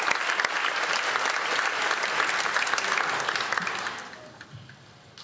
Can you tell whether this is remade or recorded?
recorded